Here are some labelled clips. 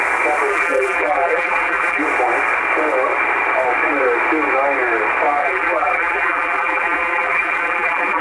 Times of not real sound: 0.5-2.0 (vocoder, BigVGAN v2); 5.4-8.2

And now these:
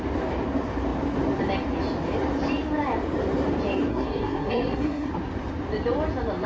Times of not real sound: 3.9-5.1 (codec, SNAC)

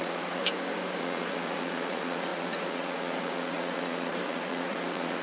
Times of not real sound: 0.0-0.4 (vocoder, Vocos); 1.0-5.2

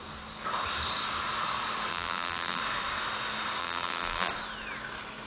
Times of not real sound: 1.9-2.6 (vocoder, BigVGAN v2); 3.6-4.3

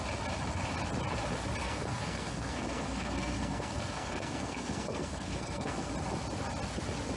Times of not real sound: 1.6-5.9 (codec, SNAC)

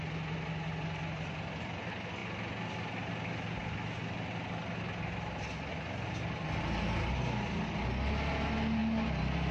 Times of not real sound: none

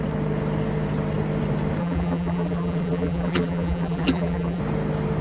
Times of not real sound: 1.8-4.6 (vocoder, BigVGAN v2)

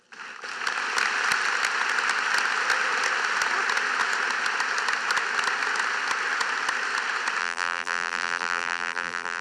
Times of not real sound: 7.4-9.4 (vocoder, BigVGAN v2)